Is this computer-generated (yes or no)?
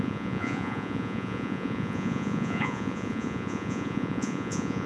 yes